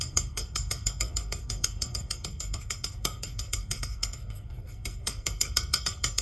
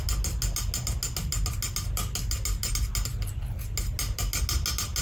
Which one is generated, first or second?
first